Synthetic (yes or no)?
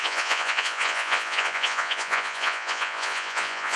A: yes